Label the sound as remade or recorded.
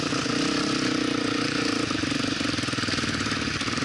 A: recorded